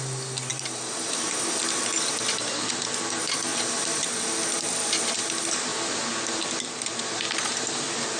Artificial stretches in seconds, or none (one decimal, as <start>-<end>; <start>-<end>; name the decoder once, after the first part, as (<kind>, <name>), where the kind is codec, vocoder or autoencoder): 0.5-1.6 (vocoder, BigVGAN v2); 3.5-4.1